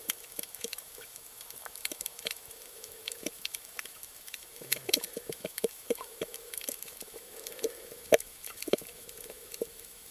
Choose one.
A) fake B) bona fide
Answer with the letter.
A